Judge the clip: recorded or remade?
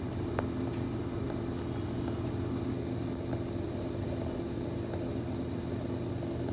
recorded